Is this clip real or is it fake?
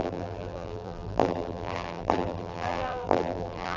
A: fake